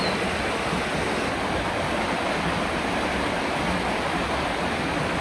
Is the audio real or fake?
real